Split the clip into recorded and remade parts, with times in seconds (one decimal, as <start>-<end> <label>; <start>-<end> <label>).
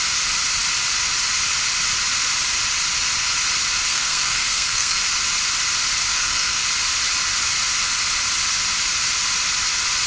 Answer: 0.0-3.9 recorded; 3.9-5.0 remade; 5.0-6.1 recorded; 6.1-6.6 remade; 6.6-10.1 recorded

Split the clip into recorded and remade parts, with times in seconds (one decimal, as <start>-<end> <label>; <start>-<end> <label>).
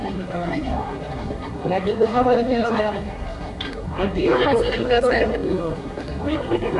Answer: 0.0-6.8 remade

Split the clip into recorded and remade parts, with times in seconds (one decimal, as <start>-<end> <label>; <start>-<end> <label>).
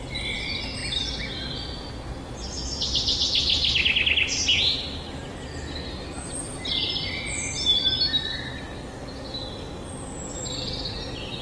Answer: 0.0-0.8 recorded; 0.8-1.9 remade; 1.9-11.4 recorded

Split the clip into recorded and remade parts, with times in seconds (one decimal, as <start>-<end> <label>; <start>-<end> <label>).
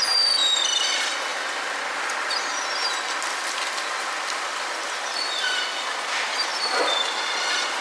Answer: 0.0-7.8 recorded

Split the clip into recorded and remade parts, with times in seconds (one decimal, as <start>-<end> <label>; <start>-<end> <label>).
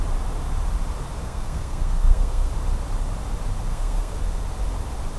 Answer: 0.0-1.2 recorded; 1.2-2.5 remade; 2.5-3.7 recorded; 3.7-4.2 remade; 4.2-5.2 recorded